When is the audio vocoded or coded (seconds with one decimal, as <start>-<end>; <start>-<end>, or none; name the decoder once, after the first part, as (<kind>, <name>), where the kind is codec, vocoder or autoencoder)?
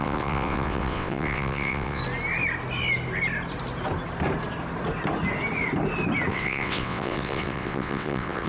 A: 0.0-2.0 (vocoder, WaveNeXt); 6.3-8.5